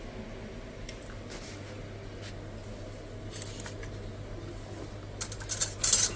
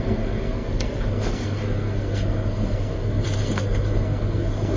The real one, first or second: first